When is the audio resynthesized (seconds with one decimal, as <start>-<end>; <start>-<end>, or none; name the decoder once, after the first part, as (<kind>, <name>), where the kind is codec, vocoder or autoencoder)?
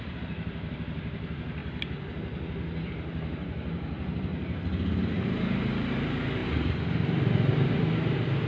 0.0-1.6 (vocoder, BigVGAN v2); 2.9-4.3; 5.1-8.5